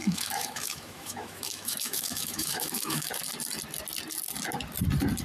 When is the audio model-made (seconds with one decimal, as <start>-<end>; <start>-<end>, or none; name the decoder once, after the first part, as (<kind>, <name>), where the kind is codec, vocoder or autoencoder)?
0.0-3.1 (autoencoder, DAC-VAE)